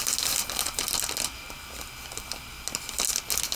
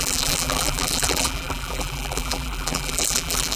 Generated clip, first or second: second